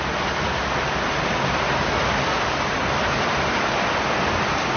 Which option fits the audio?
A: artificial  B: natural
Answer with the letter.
B